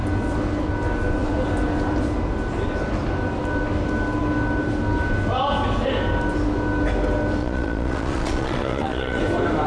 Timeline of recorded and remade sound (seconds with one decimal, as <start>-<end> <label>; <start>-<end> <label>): 0.0-7.4 recorded; 7.4-9.2 remade; 9.2-9.7 recorded